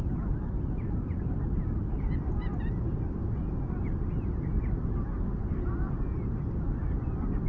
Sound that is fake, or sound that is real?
real